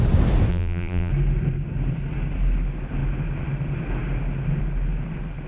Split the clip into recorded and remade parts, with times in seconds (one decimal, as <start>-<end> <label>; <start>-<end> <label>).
0.0-0.5 recorded; 0.5-1.1 remade; 1.1-5.5 recorded